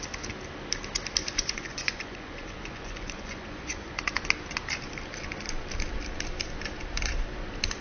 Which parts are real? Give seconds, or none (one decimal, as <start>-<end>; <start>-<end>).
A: 0.0-1.2; 4.0-7.8